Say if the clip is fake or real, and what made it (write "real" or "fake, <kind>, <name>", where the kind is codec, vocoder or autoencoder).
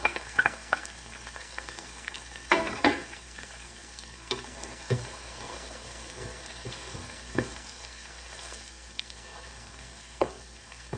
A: fake, codec, SNAC